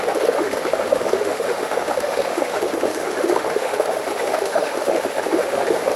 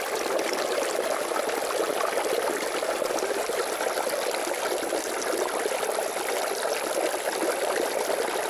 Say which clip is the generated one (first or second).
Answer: first